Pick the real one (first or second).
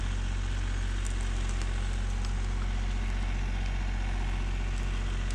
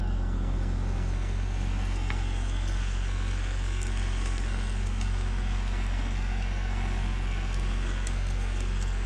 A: first